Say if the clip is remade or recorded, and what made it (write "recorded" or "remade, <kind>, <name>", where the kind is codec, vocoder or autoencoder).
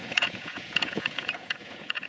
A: remade, vocoder, Vocos